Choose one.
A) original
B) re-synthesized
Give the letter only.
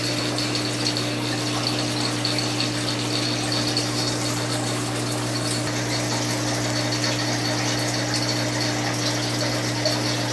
A